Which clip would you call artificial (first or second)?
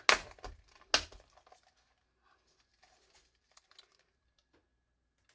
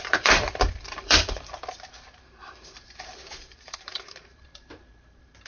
second